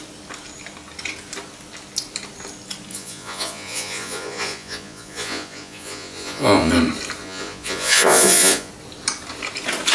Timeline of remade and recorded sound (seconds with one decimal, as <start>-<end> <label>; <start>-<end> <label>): 0.0-2.9 recorded; 2.9-6.7 remade; 6.7-7.2 recorded; 7.2-8.7 remade; 8.7-9.9 recorded